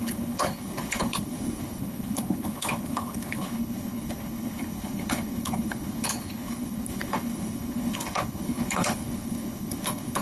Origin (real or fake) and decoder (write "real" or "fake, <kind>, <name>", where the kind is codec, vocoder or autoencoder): fake, codec, HILCodec